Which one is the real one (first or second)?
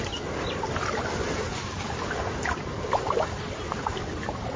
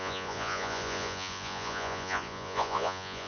first